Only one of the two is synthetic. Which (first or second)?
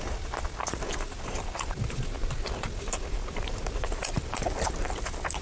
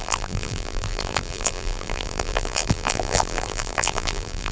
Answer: second